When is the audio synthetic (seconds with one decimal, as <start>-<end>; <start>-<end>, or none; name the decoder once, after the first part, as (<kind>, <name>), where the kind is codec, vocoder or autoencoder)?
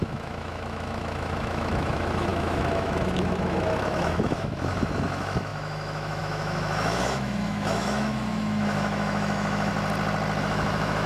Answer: 0.0-9.7 (autoencoder, DAC-VAE); 10.4-11.1